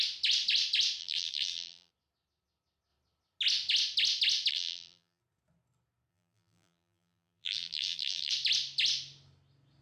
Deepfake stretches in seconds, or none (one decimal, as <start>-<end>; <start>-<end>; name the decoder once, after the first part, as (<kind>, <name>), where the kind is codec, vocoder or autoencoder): 1.0-1.9 (vocoder, BigVGAN v2); 4.5-5.2; 6.1-8.3